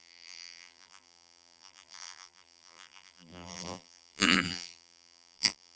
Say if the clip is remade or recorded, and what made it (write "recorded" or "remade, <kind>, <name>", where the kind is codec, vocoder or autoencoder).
remade, vocoder, BigVGAN v2